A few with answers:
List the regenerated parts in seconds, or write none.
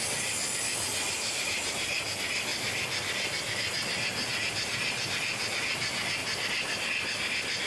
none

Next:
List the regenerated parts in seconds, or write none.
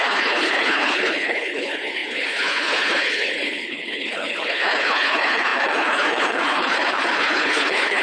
0.0-8.0 (codec, HILCodec)